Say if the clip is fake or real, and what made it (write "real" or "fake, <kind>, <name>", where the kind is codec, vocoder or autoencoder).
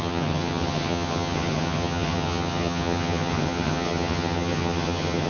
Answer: fake, vocoder, HiFi-GAN